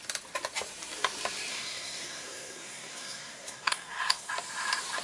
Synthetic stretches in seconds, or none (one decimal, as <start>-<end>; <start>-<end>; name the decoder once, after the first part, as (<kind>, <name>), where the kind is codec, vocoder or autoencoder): 1.5-4.3 (codec, SNAC)